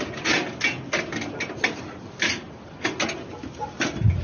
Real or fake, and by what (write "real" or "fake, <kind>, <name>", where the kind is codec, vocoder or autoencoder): real